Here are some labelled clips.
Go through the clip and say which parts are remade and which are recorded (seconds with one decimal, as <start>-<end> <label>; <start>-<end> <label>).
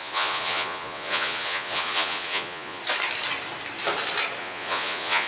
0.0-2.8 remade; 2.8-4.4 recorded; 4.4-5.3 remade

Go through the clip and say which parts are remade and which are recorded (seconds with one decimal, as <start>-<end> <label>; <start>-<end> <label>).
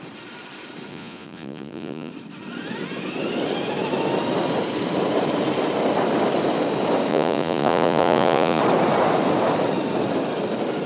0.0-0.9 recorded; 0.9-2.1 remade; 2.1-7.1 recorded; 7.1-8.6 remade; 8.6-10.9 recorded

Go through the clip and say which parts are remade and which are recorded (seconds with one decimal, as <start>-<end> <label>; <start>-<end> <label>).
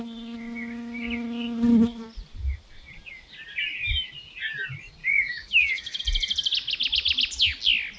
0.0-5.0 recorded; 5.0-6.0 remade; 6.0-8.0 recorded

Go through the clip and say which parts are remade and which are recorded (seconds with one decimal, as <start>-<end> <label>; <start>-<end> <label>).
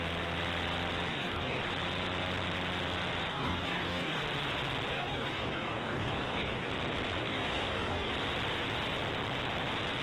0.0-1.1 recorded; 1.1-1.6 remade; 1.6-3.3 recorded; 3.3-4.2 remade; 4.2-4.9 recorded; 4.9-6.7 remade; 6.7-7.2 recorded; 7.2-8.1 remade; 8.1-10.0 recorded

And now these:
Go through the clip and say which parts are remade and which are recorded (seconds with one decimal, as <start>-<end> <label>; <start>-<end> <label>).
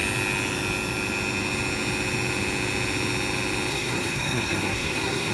0.0-3.7 recorded; 3.7-5.3 remade